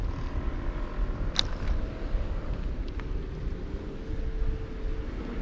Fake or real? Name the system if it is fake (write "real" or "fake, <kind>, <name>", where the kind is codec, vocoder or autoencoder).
real